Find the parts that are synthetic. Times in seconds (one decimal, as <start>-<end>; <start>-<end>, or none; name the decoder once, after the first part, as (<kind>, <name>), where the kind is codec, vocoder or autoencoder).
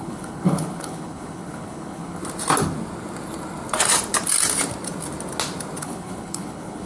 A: 0.0-2.2 (codec, HILCodec); 5.8-6.9